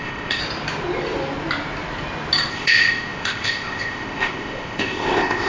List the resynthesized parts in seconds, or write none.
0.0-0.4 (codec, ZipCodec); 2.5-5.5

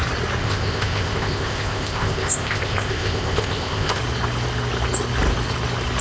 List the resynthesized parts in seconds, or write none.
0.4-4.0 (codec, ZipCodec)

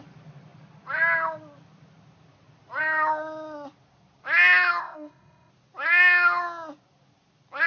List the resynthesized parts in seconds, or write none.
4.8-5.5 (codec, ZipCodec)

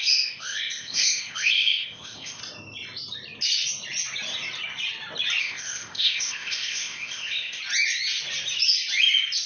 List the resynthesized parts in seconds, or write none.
0.0-2.4 (codec, ZipCodec); 5.4-7.6

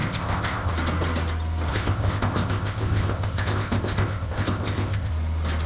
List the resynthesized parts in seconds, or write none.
0.0-0.7 (codec, ZipCodec); 1.7-5.1